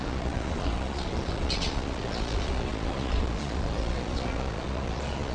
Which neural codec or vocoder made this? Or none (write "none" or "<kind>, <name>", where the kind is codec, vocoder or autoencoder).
vocoder, Vocos